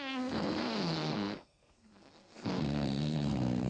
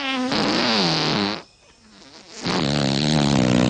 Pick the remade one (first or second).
first